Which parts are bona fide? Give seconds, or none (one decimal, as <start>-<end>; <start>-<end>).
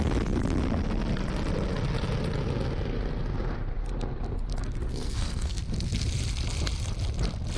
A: 0.0-4.9; 5.6-7.6